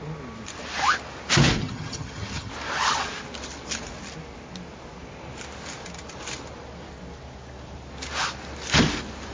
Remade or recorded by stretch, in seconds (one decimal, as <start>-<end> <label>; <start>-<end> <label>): 0.0-1.6 recorded; 1.6-2.5 remade; 2.5-9.3 recorded